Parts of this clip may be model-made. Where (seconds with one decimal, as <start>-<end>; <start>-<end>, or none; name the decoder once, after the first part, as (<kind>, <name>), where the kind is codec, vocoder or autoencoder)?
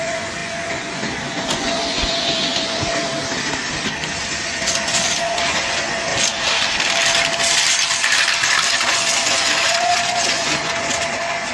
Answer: 0.0-3.1 (vocoder, Vocos); 4.2-6.1; 8.7-11.5